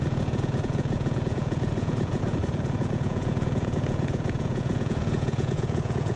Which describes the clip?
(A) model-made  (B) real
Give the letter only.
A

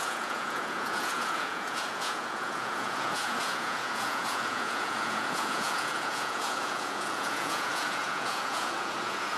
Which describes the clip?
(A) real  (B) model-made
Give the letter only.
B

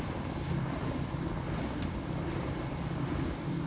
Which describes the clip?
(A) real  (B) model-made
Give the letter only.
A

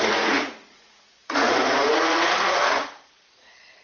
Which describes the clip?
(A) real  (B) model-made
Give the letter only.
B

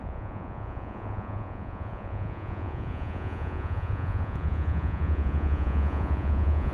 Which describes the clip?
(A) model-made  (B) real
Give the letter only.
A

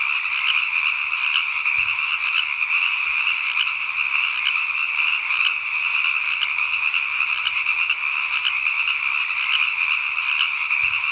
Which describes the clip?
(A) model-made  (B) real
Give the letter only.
B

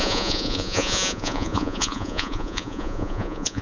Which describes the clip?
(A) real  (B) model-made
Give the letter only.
B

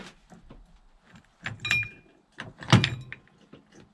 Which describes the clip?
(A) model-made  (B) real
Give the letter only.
B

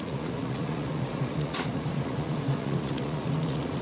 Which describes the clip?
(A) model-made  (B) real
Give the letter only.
A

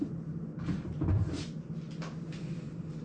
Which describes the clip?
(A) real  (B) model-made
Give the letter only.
A